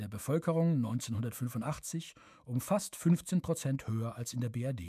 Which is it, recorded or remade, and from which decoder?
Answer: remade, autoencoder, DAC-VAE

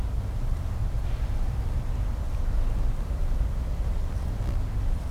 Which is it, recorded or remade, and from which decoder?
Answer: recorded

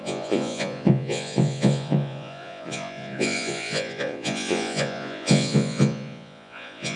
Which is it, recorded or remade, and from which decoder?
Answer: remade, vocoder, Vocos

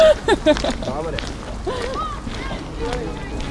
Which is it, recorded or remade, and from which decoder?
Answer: recorded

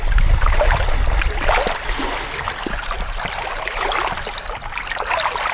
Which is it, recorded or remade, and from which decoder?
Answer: recorded